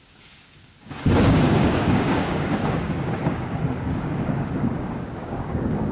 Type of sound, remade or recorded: remade